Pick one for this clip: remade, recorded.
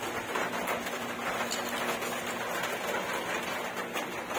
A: recorded